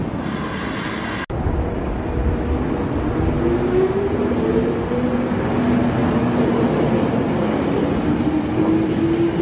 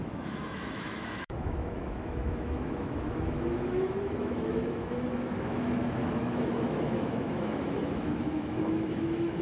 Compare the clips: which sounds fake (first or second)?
second